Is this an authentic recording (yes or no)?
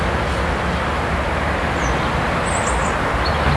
yes